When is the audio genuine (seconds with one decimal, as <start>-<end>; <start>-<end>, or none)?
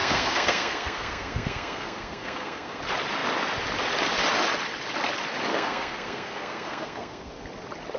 2.8-5.5; 7.3-8.0